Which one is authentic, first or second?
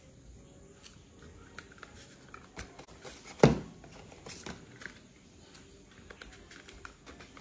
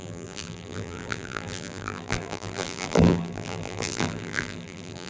first